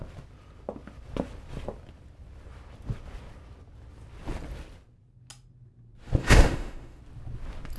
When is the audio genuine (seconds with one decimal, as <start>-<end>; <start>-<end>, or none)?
0.0-6.2; 7.0-7.8

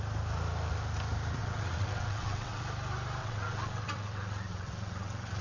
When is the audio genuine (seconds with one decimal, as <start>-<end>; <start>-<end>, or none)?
0.0-1.4; 2.6-3.2

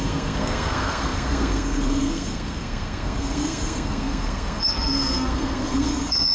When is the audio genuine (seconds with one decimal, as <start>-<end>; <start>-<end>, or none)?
none

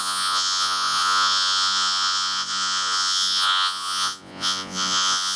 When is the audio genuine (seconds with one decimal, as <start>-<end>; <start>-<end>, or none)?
none

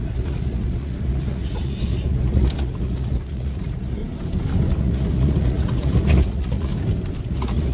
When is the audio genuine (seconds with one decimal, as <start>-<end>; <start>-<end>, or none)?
4.0-4.8; 6.7-7.2

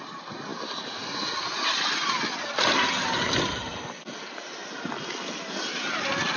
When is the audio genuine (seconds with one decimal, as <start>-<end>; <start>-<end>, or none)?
0.0-6.4

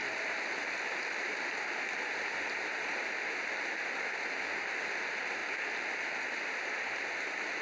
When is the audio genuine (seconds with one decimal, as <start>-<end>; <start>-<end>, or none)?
0.0-5.4; 5.9-7.6